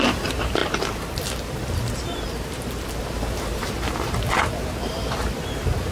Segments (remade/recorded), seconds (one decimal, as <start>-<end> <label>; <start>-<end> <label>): 0.0-5.9 remade